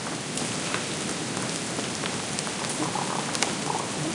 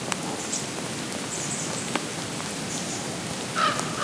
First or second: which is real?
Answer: first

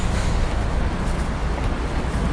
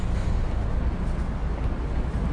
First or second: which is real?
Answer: second